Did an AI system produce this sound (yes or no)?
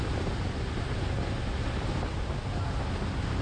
no